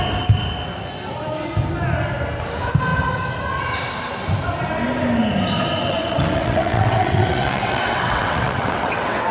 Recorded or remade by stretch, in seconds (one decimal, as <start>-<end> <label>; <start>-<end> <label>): 0.0-5.9 recorded; 5.9-9.3 remade